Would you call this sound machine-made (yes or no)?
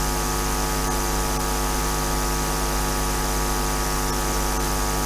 no